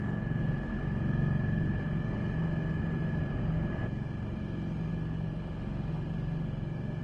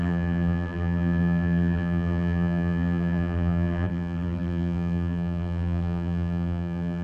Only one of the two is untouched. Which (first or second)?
first